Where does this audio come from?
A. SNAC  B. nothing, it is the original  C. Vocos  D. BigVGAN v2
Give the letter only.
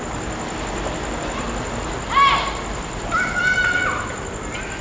B